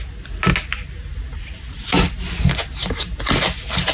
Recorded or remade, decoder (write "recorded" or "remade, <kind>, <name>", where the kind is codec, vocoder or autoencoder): recorded